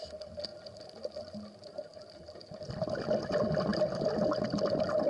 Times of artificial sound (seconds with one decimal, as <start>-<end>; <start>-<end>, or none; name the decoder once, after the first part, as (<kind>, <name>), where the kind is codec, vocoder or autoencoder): 0.5-1.2 (vocoder, BigVGAN v2); 3.7-4.2